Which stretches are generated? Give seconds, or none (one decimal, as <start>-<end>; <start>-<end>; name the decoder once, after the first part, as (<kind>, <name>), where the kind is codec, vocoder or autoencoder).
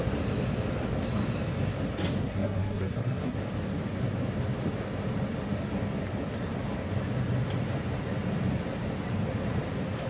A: 2.2-3.4 (codec, SNAC)